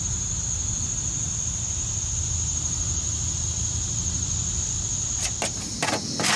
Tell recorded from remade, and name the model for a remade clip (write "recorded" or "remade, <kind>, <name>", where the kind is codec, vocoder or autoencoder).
recorded